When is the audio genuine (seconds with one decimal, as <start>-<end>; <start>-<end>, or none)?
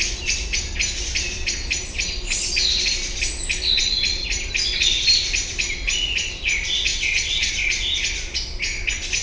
0.0-6.9; 7.5-9.2